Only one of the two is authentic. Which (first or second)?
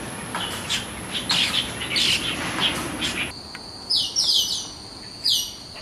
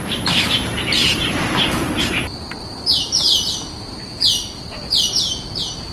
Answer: first